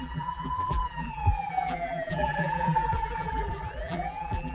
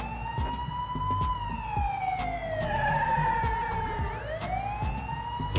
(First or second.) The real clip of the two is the second